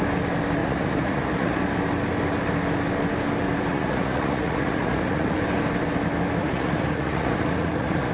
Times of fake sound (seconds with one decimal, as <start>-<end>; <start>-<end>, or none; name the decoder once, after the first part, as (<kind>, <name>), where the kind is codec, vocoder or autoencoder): 0.6-1.6 (vocoder, Vocos); 3.7-5.4; 6.4-8.1

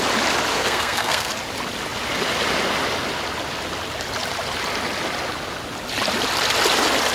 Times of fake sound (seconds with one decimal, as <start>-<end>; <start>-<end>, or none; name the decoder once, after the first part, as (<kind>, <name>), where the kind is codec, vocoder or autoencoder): 0.5-1.3 (codec, SNAC)

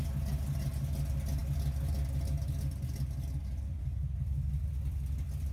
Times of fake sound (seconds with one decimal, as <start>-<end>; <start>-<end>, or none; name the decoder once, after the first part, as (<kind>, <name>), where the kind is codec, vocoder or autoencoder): none

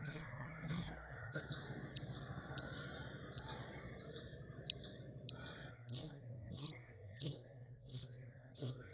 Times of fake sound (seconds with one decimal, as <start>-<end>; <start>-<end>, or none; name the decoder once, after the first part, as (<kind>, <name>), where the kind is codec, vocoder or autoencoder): 0.0-1.4 (codec, SNAC); 5.7-8.9

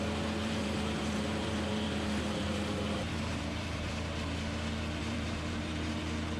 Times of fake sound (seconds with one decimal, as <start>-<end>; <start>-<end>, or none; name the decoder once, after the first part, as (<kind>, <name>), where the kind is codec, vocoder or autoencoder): 0.4-3.9 (vocoder, BigVGAN v2); 5.0-6.0